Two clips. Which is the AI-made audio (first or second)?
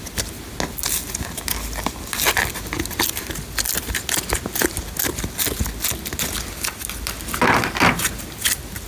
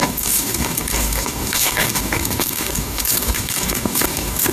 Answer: second